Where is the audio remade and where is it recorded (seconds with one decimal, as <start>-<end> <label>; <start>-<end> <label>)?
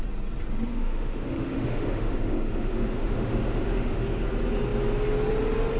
0.0-0.7 recorded; 0.7-4.2 remade; 4.2-5.8 recorded